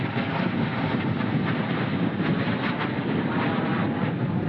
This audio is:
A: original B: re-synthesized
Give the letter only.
A